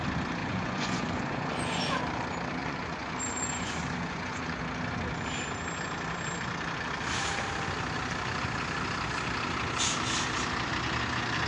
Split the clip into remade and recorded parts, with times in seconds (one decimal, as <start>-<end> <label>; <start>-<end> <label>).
0.0-0.4 recorded; 0.4-2.0 remade; 2.0-2.6 recorded; 2.6-4.6 remade; 4.6-11.5 recorded